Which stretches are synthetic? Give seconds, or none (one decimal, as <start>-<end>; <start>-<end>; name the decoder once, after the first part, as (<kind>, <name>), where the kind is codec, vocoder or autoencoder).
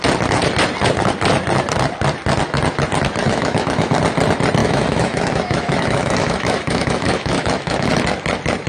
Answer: 3.2-3.9 (autoencoder, DAC-VAE); 4.6-7.9